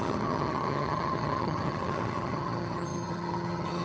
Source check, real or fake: fake